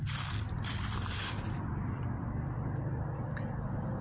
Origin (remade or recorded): remade